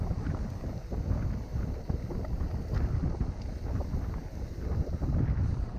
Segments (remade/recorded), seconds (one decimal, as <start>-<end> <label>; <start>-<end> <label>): 0.0-5.8 recorded